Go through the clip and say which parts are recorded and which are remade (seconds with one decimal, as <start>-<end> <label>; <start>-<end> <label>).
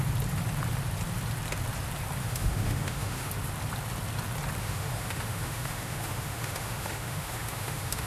0.0-2.2 recorded; 2.2-3.3 remade; 3.3-4.6 recorded; 4.6-8.1 remade